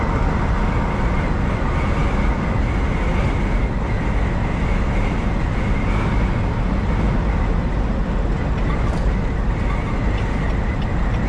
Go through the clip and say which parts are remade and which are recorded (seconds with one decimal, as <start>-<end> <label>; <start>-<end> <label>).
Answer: 0.0-11.3 recorded